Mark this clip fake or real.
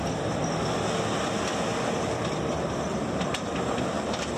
real